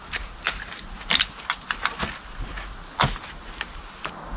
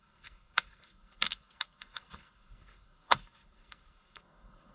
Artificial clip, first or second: second